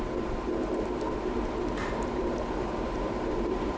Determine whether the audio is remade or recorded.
remade